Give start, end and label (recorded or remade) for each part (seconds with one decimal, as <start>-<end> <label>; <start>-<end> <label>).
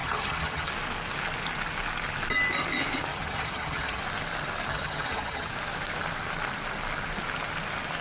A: 0.0-0.7 remade; 0.7-3.1 recorded; 3.1-4.0 remade; 4.0-4.7 recorded; 4.7-5.5 remade; 5.5-8.0 recorded